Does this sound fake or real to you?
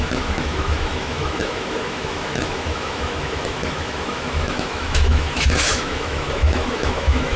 fake